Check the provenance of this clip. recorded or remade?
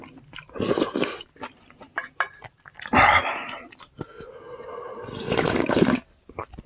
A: recorded